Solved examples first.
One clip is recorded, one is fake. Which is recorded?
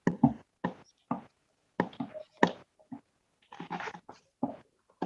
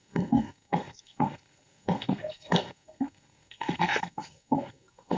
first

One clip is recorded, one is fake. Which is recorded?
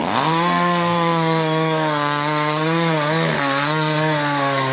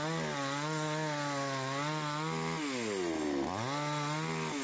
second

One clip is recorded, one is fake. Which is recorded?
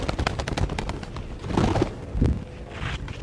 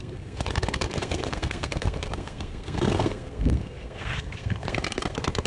first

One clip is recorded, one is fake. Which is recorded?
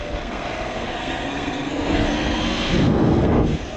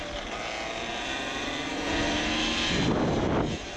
second